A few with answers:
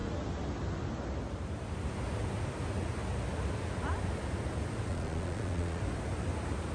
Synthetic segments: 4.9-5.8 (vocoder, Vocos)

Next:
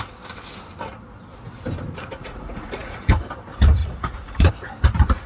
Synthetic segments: 2.2-3.1 (vocoder, Vocos); 3.8-4.5

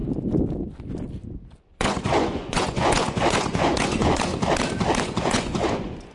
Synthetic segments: 1.6-4.3 (vocoder, Vocos); 5.0-6.1

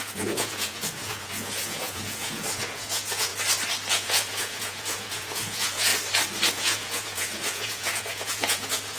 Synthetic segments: 0.0-3.3 (vocoder, Vocos); 3.9-5.9; 6.5-9.0

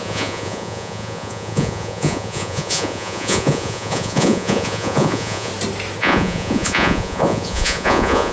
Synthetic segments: 0.0-5.5 (vocoder, Vocos); 6.0-8.3